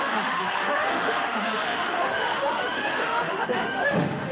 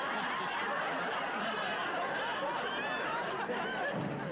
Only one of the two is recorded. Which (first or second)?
second